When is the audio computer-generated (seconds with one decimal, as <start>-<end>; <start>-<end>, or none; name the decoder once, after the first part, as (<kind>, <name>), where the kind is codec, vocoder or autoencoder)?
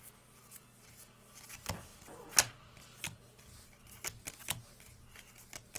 none